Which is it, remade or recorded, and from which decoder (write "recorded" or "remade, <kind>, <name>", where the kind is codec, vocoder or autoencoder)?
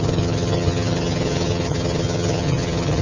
remade, vocoder, HiFi-GAN